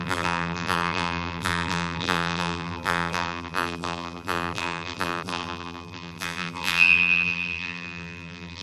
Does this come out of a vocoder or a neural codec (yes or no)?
yes